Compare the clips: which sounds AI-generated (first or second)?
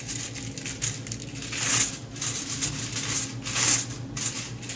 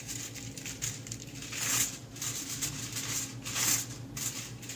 second